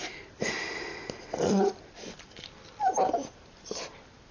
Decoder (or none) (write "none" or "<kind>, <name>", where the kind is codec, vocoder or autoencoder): none